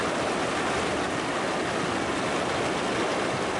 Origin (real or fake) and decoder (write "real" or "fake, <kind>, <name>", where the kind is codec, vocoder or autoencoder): real